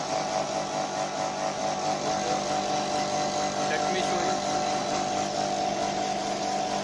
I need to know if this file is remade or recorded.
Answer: recorded